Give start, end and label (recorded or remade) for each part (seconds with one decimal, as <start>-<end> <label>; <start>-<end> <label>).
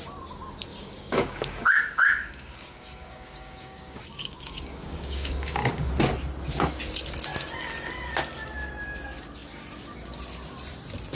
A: 0.0-0.7 recorded; 0.7-5.9 remade; 5.9-11.1 recorded